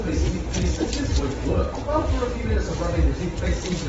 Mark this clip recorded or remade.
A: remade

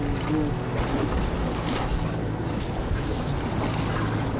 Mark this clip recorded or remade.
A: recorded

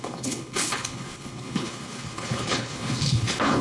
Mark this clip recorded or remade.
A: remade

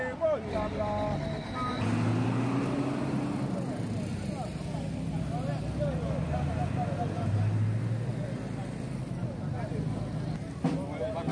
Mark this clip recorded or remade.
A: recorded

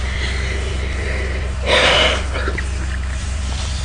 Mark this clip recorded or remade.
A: remade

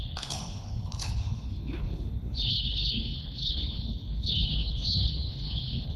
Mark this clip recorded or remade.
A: remade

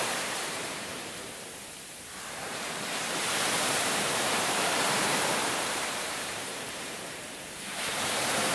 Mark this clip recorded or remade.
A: remade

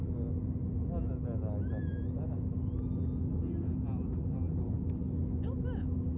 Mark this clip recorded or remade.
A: recorded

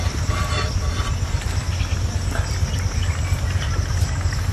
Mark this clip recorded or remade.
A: recorded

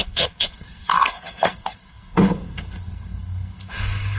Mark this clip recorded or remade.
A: remade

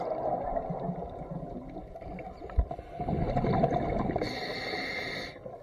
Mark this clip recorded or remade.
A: recorded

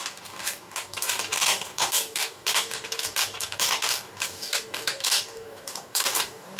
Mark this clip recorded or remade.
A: remade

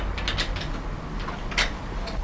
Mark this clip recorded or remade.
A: recorded